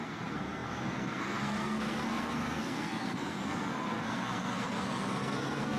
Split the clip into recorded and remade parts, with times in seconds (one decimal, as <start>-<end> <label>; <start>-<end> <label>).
0.0-5.8 remade